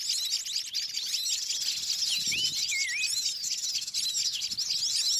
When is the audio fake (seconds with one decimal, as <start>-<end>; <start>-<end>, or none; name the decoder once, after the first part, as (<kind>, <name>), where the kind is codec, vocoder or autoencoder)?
none